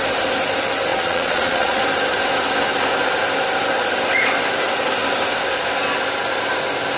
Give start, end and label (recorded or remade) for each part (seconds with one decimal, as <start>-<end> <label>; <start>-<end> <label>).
0.0-0.9 recorded; 0.9-1.8 remade; 1.8-7.0 recorded